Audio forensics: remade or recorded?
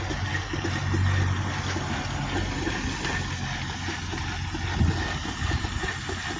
recorded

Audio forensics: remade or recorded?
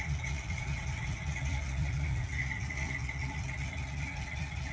remade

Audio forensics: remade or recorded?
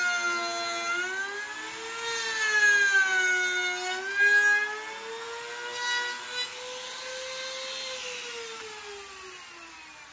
recorded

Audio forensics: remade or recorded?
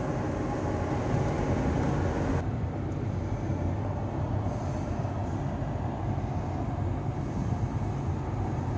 recorded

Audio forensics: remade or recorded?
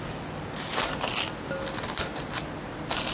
recorded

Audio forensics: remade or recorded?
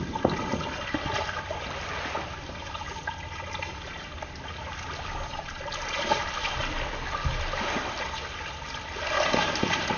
recorded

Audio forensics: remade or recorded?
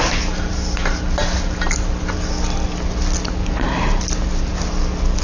recorded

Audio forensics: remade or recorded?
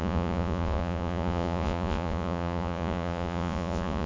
remade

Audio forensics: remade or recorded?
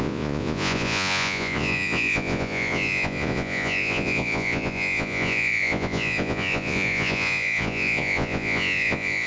remade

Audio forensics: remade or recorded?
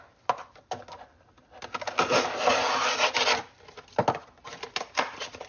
recorded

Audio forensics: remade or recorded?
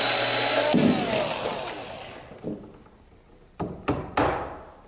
recorded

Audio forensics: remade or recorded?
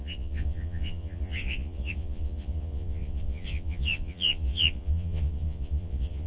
remade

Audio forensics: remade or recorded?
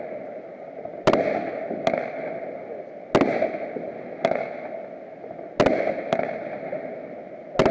recorded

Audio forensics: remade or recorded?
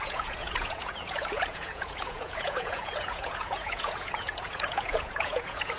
remade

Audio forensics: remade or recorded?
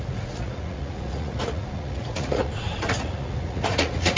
remade